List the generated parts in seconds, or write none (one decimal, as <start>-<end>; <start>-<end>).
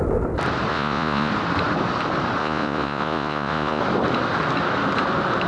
0.7-1.3; 2.4-3.8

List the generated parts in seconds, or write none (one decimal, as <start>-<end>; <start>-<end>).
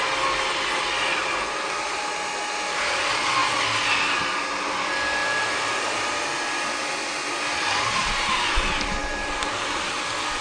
none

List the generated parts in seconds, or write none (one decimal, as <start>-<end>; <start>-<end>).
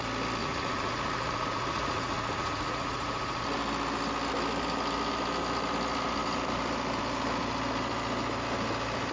0.4-3.4